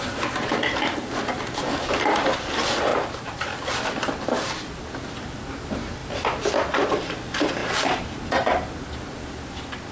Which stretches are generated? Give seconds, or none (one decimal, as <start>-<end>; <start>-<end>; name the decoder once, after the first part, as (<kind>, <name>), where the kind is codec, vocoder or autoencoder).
2.9-3.7 (vocoder, BigVGAN v2); 7.6-8.2